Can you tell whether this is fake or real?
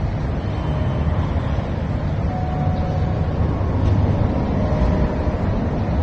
real